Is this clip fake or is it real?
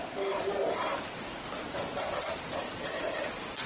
real